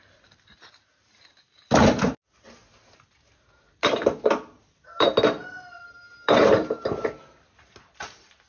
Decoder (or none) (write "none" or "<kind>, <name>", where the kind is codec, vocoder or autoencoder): none